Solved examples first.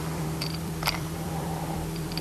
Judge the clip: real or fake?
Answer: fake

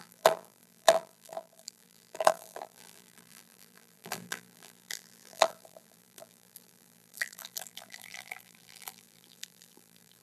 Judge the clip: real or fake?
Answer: fake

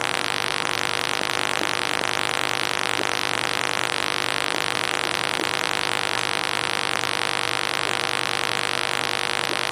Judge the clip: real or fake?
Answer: real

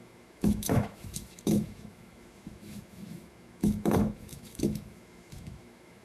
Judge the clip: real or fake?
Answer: fake